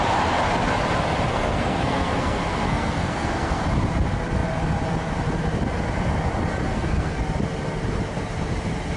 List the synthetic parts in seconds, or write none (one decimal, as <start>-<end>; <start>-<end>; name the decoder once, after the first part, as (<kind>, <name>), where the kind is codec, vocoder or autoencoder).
1.3-3.6 (codec, SNAC); 6.7-7.2